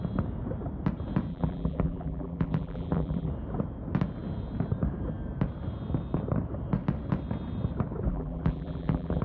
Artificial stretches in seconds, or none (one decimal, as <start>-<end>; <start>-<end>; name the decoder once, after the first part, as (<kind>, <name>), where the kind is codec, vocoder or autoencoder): 1.3-3.3 (vocoder, BigVGAN v2); 8.1-9.2